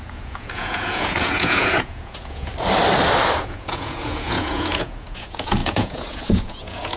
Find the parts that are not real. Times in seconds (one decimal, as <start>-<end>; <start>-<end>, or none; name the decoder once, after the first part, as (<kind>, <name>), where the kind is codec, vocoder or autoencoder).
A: 0.0-2.5 (vocoder, Vocos); 3.4-7.0